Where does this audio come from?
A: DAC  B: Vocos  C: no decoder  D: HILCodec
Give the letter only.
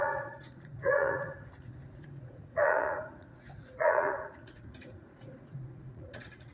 B